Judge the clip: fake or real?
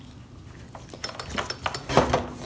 real